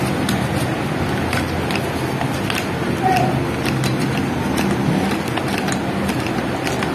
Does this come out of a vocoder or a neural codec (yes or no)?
no